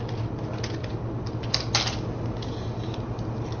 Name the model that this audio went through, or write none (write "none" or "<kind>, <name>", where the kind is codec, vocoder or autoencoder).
none